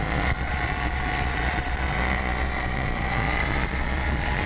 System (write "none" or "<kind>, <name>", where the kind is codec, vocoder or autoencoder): vocoder, Vocos